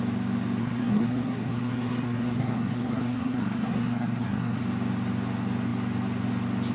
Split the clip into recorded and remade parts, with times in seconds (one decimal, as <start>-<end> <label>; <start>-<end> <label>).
0.0-0.6 recorded; 0.6-4.6 remade; 4.6-6.7 recorded